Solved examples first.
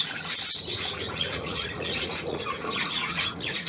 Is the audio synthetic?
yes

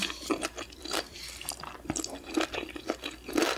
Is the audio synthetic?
yes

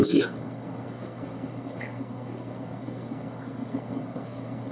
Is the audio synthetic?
yes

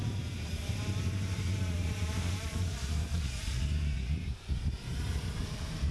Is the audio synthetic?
yes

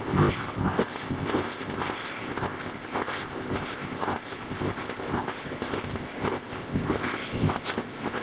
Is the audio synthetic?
yes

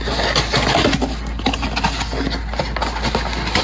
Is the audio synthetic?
no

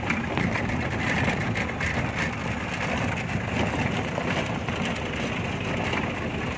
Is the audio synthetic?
no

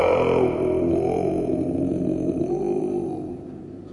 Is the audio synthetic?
no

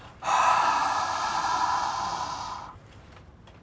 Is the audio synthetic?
no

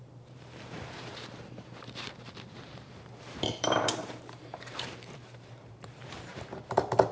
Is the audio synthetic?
yes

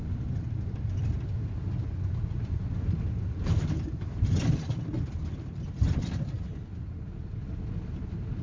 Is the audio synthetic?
no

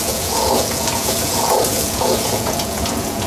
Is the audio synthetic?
yes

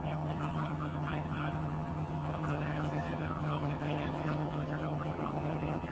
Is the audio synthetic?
yes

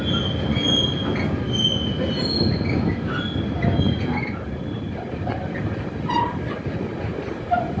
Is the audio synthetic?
no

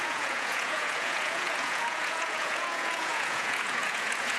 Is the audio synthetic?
yes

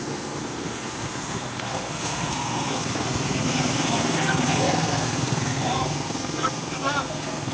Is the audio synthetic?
yes